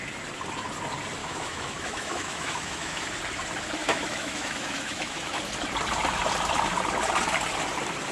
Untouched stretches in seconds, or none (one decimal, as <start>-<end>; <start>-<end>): 0.0-1.2; 3.0-3.8; 5.4-8.1